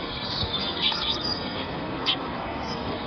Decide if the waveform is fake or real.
fake